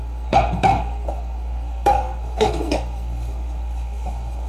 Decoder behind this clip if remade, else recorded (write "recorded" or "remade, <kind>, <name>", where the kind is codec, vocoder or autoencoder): remade, codec, SNAC